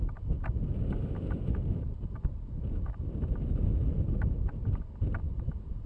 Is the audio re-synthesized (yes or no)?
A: no